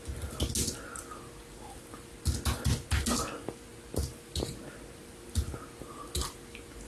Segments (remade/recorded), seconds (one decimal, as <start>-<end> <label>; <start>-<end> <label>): 0.0-6.9 recorded